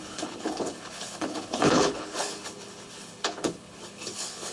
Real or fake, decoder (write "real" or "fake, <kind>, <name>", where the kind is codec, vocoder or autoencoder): fake, codec, HILCodec